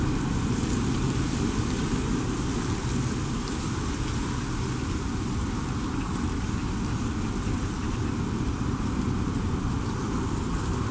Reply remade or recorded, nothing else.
recorded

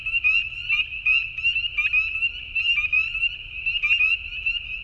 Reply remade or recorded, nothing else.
recorded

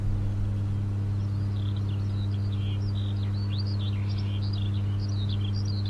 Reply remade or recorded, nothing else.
recorded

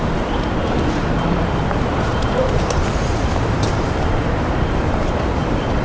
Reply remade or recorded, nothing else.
remade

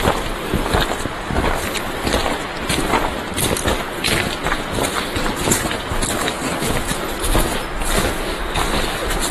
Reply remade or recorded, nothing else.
recorded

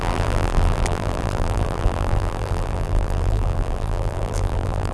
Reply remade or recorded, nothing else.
remade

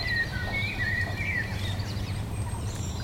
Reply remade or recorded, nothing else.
remade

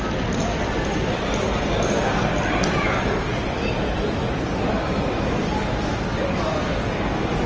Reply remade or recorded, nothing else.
remade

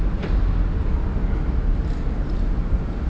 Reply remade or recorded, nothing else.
recorded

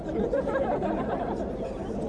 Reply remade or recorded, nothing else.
recorded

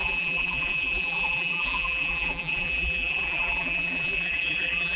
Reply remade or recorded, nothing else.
remade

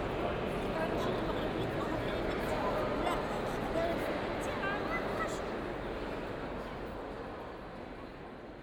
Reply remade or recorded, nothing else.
recorded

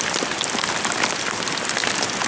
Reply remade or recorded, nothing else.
recorded